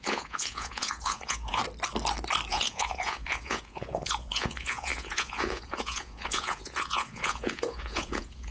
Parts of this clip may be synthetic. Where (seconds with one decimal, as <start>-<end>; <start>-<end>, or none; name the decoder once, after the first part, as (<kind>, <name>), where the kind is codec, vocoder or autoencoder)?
0.0-1.6 (vocoder, Vocos); 2.5-8.5